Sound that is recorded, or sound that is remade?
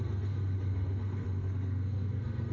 remade